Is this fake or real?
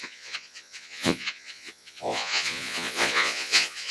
fake